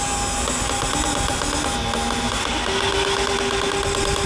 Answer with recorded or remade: recorded